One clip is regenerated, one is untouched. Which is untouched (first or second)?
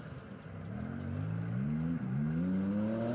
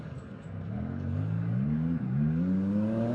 first